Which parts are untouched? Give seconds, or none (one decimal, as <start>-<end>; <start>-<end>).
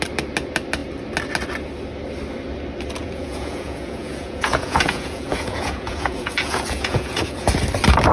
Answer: 0.0-3.0; 7.5-8.1